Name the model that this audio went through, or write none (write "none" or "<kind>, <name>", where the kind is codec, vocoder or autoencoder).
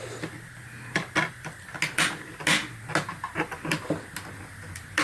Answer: none